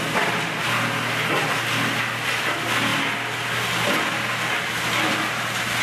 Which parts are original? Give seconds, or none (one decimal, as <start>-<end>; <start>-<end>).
0.0-5.8